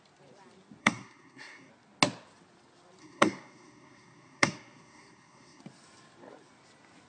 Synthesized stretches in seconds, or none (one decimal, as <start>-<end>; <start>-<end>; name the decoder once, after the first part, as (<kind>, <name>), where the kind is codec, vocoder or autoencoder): 0.8-1.7 (codec, SNAC); 3.0-5.6